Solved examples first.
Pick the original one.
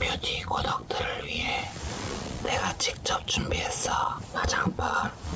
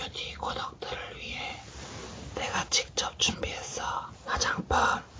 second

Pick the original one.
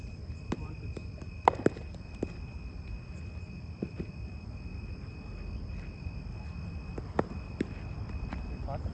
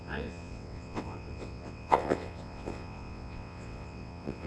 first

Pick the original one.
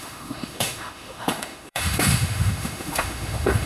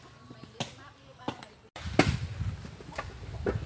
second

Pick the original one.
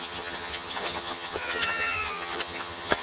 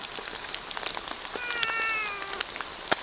second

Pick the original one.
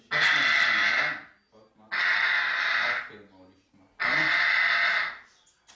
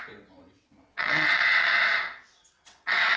first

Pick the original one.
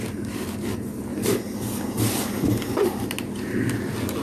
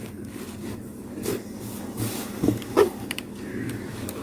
first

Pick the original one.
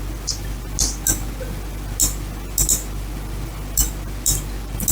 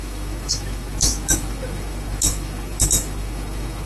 first